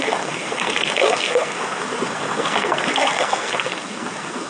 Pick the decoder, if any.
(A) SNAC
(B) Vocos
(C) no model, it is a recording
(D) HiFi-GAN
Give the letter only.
A